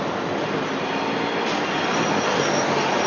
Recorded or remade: recorded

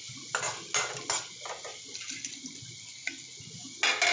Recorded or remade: recorded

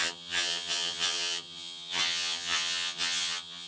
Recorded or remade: remade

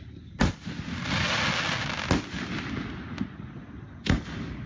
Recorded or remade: recorded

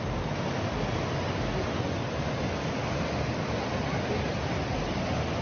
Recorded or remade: recorded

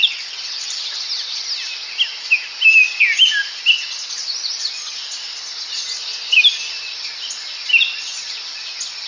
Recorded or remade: recorded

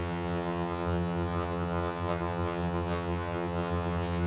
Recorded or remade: remade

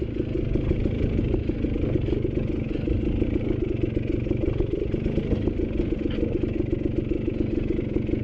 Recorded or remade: recorded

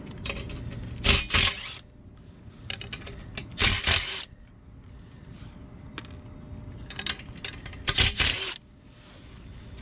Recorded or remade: recorded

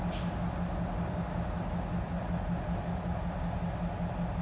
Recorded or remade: recorded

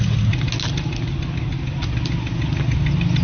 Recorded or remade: recorded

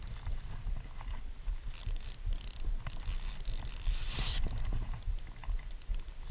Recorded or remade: recorded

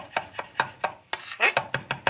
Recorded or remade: recorded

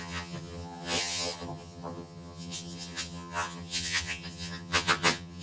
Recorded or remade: remade